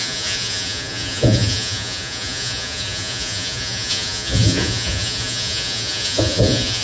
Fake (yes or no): yes